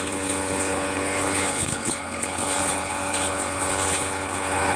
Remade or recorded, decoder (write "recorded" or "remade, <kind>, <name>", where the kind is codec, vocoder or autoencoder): remade, codec, HILCodec